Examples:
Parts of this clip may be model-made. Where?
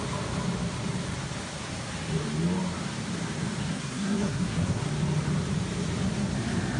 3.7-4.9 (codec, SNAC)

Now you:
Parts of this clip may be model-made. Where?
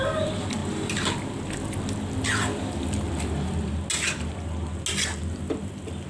none